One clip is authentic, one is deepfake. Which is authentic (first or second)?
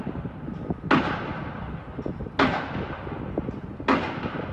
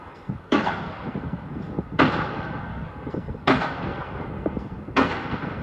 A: first